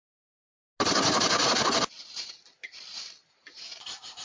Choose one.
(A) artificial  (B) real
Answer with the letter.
B